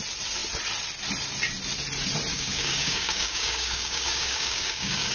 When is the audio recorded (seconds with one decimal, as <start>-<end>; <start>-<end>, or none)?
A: 0.0-2.3